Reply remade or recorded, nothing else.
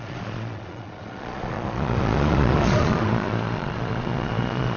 remade